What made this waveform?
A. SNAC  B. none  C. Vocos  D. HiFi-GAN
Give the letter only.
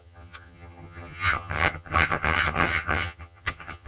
D